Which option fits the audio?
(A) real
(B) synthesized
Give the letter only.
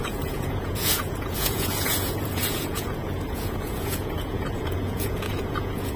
B